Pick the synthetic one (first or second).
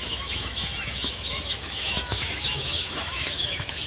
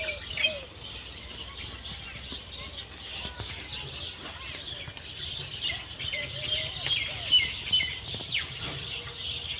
first